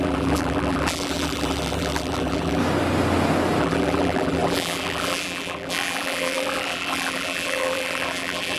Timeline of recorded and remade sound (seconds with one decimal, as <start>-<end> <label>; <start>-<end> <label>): 0.0-2.6 remade; 2.6-3.6 recorded; 3.6-8.6 remade